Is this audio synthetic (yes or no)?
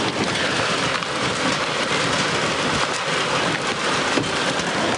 no